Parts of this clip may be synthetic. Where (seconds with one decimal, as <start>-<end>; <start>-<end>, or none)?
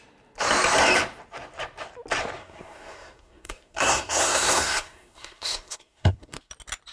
2.4-6.5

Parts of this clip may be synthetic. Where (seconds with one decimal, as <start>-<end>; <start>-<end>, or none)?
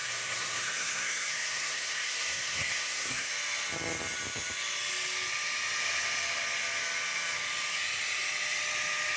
0.0-3.3